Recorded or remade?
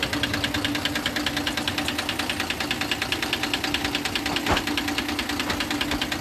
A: recorded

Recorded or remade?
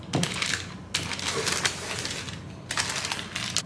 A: recorded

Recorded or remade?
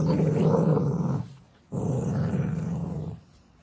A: remade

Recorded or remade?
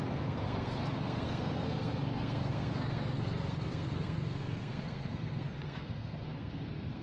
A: remade